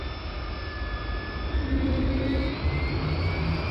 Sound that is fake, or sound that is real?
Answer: real